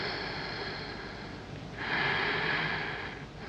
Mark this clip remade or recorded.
recorded